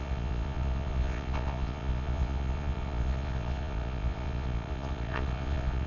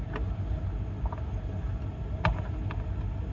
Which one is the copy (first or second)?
first